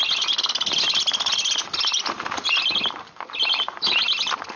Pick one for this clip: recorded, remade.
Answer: recorded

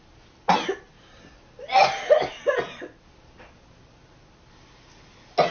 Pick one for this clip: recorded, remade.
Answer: recorded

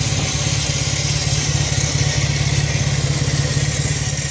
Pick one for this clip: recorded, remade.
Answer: recorded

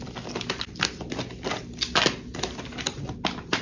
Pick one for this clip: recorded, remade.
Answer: recorded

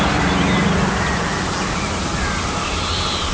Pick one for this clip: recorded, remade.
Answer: recorded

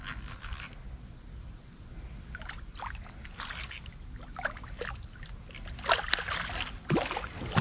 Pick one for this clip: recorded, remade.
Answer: recorded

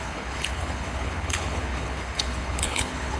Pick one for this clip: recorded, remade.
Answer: remade